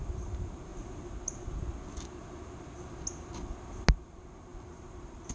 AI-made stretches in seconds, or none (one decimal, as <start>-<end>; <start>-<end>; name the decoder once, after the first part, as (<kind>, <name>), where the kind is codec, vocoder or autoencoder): 0.0-0.7 (vocoder, BigVGAN v2); 3.9-5.3

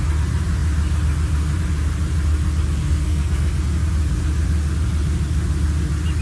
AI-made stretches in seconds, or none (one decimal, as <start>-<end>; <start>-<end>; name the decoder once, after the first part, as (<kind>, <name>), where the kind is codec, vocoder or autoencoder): 2.8-3.5 (codec, SNAC)